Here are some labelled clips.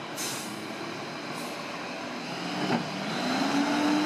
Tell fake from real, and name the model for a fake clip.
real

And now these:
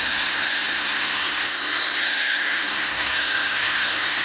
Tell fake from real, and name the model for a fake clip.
fake, codec, SNAC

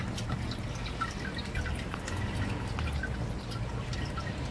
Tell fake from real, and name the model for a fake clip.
real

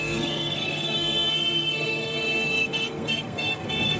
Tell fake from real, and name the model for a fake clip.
fake, codec, SNAC